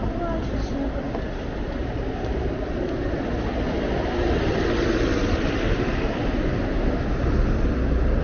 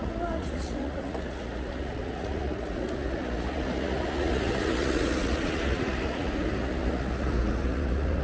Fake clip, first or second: second